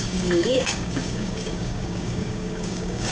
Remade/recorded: remade